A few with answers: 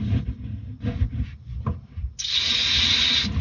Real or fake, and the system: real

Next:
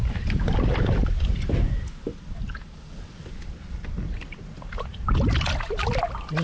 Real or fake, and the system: real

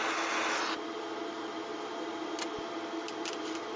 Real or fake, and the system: real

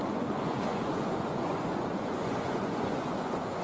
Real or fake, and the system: fake, vocoder, Vocos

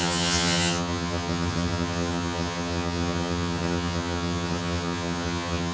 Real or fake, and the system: fake, vocoder, HiFi-GAN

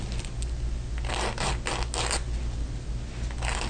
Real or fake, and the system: real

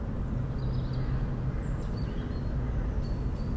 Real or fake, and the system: real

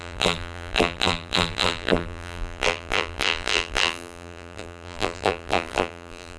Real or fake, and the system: fake, vocoder, BigVGAN v2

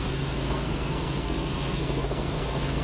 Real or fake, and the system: fake, codec, SNAC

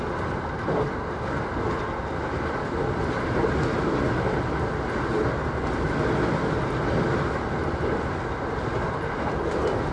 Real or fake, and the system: real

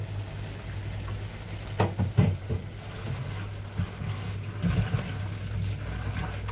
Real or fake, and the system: real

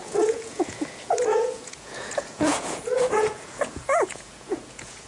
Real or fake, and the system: fake, vocoder, Vocos